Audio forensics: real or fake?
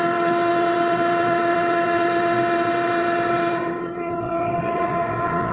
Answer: fake